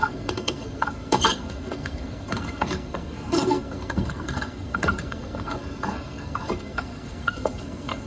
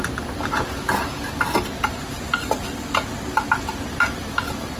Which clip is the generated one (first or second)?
first